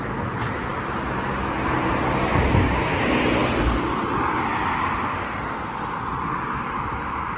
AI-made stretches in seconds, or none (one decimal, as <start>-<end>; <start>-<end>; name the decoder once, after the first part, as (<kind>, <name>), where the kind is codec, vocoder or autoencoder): none